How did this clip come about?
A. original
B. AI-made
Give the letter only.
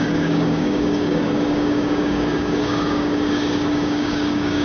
B